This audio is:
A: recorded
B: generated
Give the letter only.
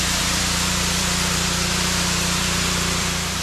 B